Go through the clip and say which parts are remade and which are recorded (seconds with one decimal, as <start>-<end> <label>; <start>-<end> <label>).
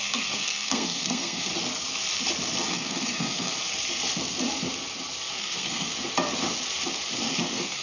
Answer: 0.0-1.5 remade; 1.5-2.7 recorded; 2.7-3.5 remade; 3.5-5.4 recorded; 5.4-5.9 remade; 5.9-7.3 recorded; 7.3-7.8 remade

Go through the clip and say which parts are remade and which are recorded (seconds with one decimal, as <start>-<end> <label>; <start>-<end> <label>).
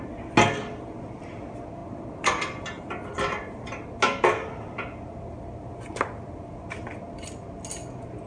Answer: 0.0-8.3 recorded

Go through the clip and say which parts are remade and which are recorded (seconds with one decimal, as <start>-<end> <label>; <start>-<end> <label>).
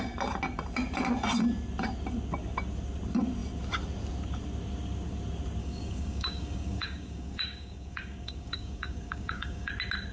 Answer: 0.0-5.6 recorded; 5.6-9.7 remade; 9.7-10.1 recorded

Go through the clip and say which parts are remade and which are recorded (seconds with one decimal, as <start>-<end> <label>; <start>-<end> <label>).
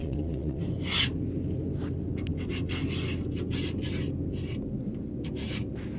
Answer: 0.0-0.6 remade; 0.6-6.0 recorded